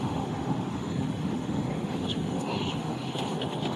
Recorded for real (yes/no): no